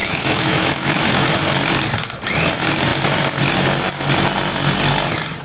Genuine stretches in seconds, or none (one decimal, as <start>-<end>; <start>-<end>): 1.3-5.4